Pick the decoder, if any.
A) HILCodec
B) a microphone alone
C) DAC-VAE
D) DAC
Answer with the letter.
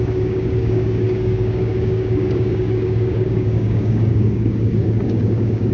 D